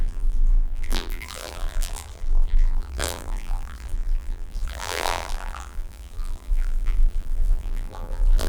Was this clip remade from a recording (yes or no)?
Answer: yes